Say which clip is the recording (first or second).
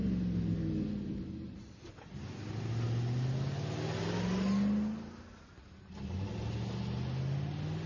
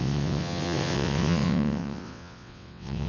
first